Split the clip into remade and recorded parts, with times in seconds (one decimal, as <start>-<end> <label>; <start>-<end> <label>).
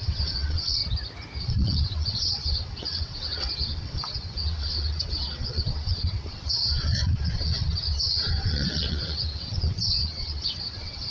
0.0-0.8 remade; 0.8-1.4 recorded; 1.4-11.1 remade